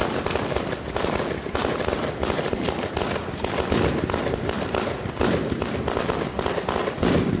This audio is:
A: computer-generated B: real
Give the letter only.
B